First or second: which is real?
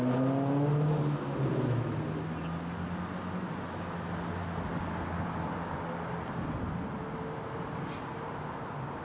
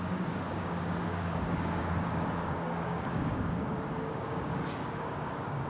first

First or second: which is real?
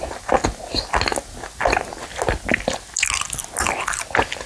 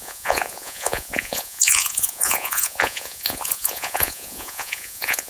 first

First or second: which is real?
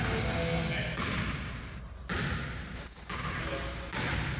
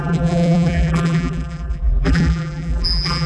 first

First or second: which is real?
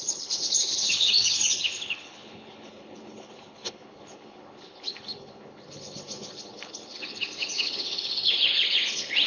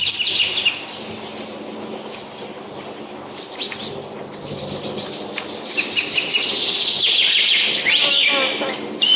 second